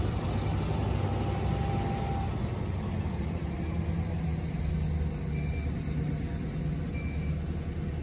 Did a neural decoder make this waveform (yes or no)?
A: no